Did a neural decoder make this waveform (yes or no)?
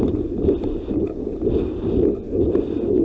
no